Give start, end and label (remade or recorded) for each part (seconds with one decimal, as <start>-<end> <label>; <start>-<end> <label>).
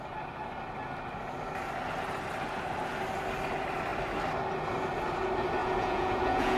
0.0-5.6 recorded; 5.6-6.6 remade